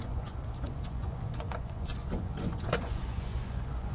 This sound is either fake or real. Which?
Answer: fake